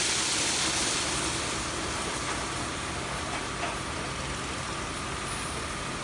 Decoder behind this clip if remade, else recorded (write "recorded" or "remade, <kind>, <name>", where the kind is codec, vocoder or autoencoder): recorded